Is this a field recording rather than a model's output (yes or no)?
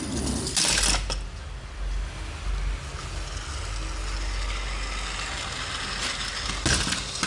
yes